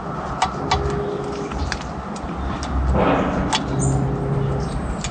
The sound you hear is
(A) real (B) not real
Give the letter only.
A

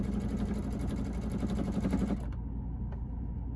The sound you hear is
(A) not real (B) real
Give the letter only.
B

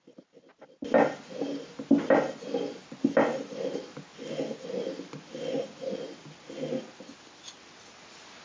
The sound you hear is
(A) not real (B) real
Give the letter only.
B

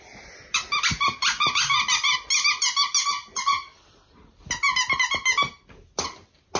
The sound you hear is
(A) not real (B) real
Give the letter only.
B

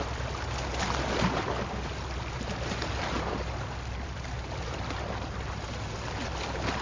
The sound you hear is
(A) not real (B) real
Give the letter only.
B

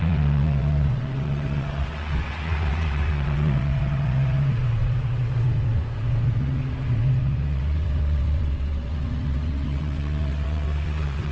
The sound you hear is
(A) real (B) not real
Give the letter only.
B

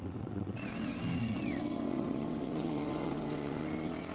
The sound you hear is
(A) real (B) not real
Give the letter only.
B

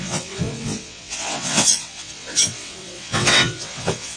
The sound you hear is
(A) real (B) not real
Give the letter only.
B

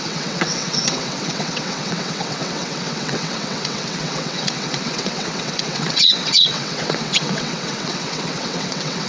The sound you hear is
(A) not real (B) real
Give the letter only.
A